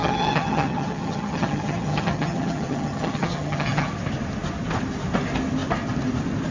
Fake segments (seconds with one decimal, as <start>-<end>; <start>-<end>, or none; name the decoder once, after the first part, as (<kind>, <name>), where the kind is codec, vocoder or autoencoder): 0.0-3.9 (vocoder, HiFi-GAN)